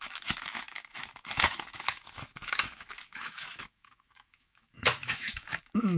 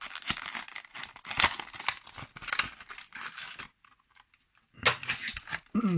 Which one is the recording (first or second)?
second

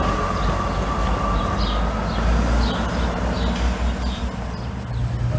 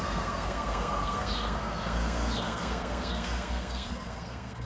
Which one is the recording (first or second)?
first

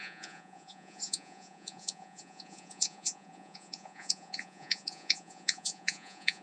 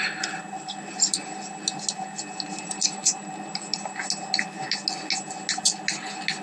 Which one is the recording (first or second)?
second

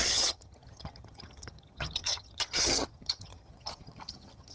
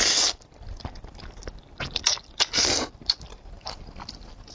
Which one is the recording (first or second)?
second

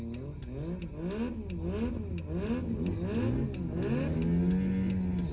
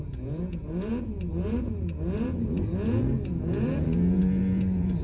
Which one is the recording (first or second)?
first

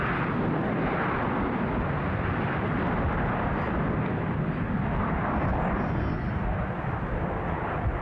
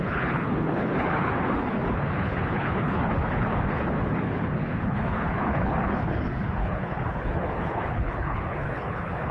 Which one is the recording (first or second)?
first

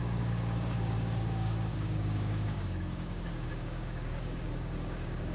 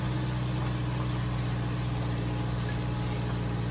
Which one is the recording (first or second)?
second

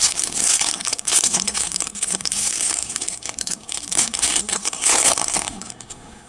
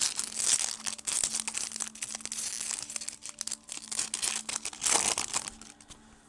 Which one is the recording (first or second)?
second